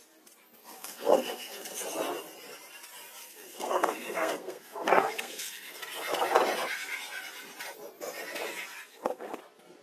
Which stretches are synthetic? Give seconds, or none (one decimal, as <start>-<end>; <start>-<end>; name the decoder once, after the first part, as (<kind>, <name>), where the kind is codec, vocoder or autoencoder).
0.6-1.8 (codec, SNAC); 3.2-5.8; 8.9-9.4